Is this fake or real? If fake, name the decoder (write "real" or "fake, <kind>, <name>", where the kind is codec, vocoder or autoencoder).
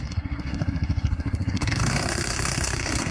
fake, codec, SNAC